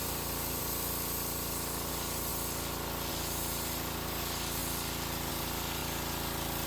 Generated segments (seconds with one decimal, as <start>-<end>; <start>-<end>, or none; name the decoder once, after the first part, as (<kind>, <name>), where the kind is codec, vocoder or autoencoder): 0.0-0.6 (vocoder, BigVGAN v2); 1.9-2.3; 3.1-4.6; 5.3-5.8